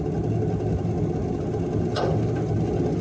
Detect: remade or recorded recorded